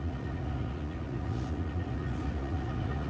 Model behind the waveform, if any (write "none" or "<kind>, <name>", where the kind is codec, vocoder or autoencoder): vocoder, Vocos